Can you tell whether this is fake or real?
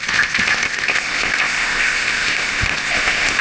fake